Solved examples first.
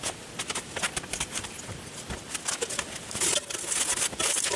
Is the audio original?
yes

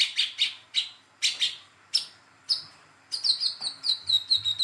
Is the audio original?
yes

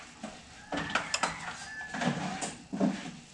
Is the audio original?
yes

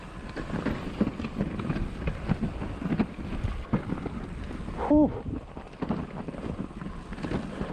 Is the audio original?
yes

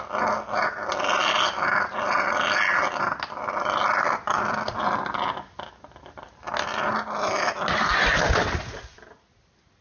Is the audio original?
yes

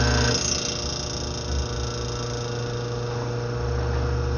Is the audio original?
yes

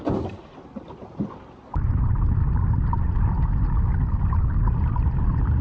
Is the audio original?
yes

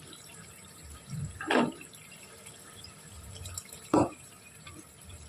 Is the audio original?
no